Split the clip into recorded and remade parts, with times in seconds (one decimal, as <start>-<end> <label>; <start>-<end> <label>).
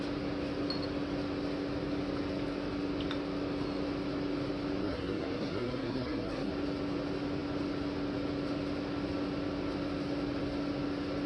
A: 0.0-4.8 recorded; 4.8-6.5 remade; 6.5-11.3 recorded